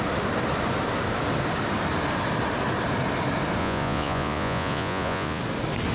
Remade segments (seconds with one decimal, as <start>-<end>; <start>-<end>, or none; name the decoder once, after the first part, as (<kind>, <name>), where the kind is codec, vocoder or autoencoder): 3.6-5.4 (vocoder, Vocos)